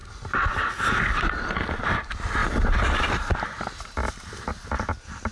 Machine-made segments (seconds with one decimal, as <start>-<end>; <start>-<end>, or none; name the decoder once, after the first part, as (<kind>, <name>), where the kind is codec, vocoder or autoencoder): none